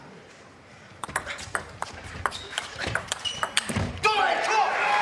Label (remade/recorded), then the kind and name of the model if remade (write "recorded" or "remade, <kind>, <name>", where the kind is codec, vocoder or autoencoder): remade, vocoder, BigVGAN v2